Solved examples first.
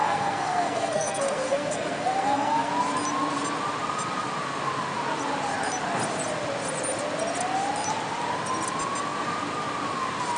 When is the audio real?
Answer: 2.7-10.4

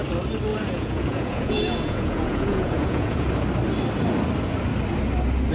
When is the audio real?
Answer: 0.0-0.5; 3.3-5.5